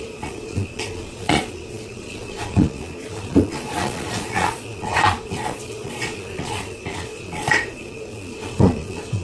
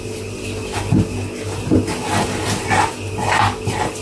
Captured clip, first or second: second